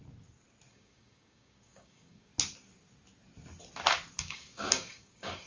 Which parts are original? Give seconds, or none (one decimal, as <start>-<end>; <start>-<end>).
0.0-0.7; 2.3-4.2